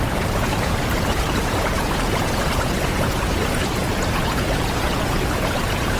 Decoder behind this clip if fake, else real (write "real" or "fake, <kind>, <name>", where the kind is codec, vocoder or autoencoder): fake, vocoder, Vocos